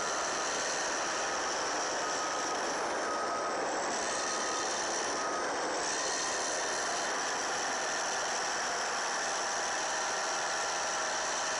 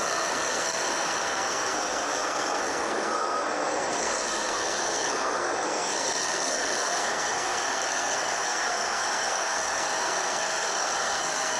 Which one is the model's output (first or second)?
second